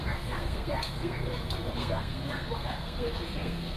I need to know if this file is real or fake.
fake